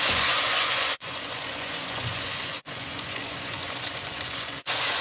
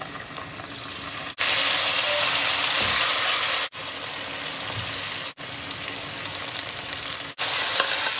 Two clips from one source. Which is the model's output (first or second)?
first